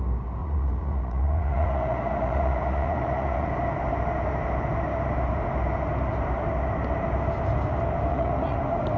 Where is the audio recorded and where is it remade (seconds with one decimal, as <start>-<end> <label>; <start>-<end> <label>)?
0.0-0.4 recorded; 0.4-3.5 remade; 3.5-8.1 recorded; 8.1-8.6 remade; 8.6-9.0 recorded